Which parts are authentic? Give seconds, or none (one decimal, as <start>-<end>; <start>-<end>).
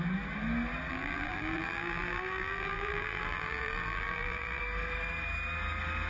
0.0-0.9; 4.6-6.1